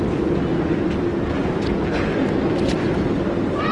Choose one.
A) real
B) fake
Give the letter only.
A